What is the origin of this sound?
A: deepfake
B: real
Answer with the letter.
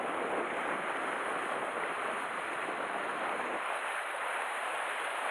B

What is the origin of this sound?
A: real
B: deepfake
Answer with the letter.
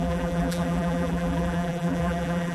B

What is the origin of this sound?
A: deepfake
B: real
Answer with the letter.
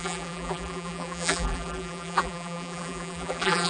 A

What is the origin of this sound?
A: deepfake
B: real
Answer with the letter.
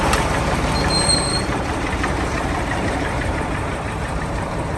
A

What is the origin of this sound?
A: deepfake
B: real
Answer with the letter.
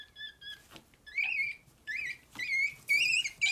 B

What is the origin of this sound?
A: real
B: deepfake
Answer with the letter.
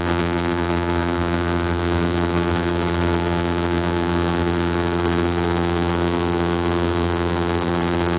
B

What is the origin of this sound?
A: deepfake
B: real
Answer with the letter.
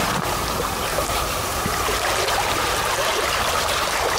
A